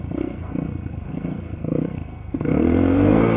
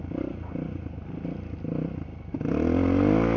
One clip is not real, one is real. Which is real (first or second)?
second